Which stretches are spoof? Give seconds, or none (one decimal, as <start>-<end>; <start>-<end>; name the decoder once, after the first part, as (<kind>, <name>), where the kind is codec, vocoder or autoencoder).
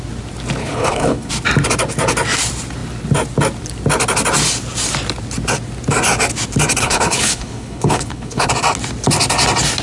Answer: 0.6-1.3 (codec, HILCodec); 6.8-8.5